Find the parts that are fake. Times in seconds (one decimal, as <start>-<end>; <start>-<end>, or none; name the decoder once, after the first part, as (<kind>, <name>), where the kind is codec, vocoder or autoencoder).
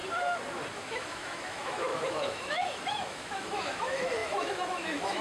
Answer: 0.7-5.2 (autoencoder, DAC-VAE)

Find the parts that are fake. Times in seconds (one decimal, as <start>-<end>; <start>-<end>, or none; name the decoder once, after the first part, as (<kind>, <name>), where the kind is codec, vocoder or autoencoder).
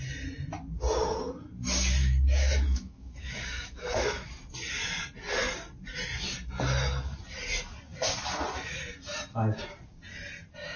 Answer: 2.0-4.3 (autoencoder, DAC-VAE)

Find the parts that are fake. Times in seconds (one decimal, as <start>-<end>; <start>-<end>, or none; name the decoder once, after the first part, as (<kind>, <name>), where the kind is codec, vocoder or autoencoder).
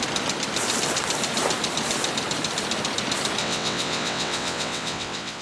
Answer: 3.4-5.4 (vocoder, WaveNeXt)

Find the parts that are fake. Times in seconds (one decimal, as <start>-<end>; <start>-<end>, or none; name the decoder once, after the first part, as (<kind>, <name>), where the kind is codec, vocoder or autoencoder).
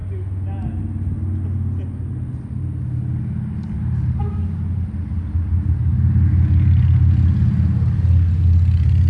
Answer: none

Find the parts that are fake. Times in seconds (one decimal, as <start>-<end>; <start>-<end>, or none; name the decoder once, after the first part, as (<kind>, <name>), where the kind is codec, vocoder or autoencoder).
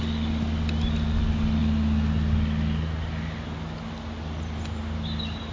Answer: none